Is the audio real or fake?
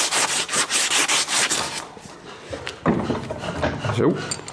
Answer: real